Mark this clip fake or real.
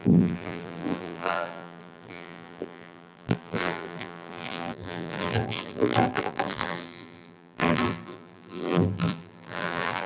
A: fake